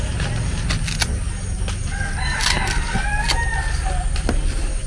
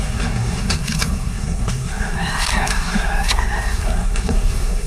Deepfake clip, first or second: second